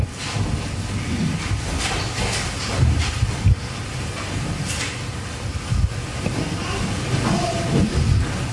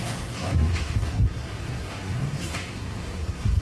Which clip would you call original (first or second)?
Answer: first